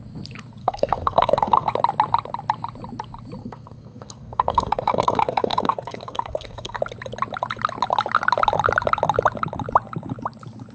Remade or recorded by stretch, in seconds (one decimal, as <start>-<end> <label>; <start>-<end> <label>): 0.0-0.6 recorded; 0.6-1.7 remade; 1.7-3.4 recorded; 3.4-6.8 remade; 6.8-10.7 recorded